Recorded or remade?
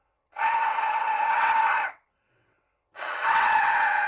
remade